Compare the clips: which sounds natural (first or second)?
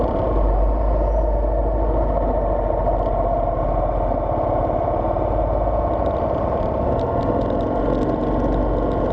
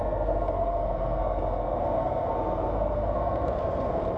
first